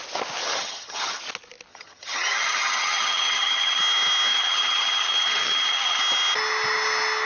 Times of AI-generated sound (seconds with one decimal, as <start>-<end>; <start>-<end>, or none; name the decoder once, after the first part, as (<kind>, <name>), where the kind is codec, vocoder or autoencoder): 0.4-1.2 (vocoder, HiFi-GAN); 1.7-3.8; 4.3-6.0